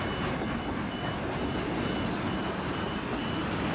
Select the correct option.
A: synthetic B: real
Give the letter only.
B